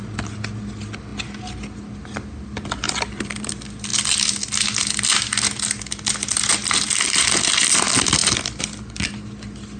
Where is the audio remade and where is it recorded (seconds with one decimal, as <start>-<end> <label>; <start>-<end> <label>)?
0.0-9.8 recorded